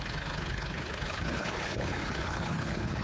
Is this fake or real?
fake